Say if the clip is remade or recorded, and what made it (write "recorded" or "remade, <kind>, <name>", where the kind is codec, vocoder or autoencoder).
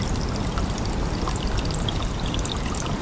recorded